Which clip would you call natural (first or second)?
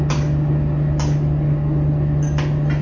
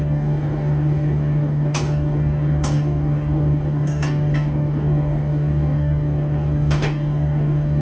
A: first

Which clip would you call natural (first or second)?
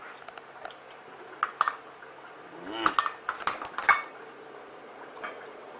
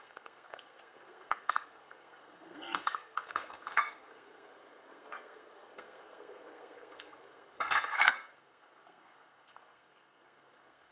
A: first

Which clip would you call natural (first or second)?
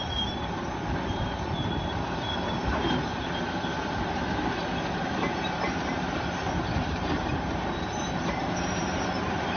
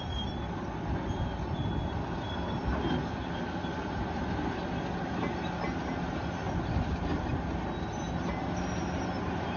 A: second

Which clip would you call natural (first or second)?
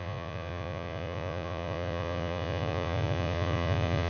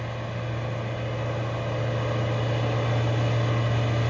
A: second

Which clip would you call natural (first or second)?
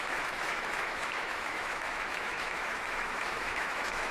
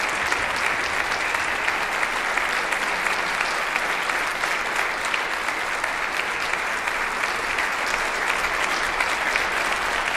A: second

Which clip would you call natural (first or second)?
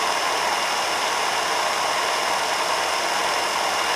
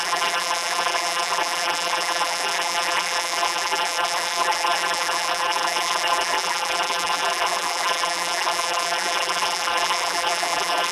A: first